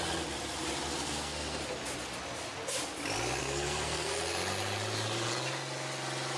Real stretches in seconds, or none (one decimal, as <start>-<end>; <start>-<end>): 0.0-0.9; 1.6-3.4; 4.1-6.4